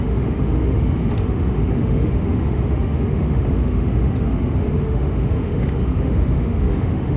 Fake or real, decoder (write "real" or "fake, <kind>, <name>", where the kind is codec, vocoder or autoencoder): fake, autoencoder, DAC-VAE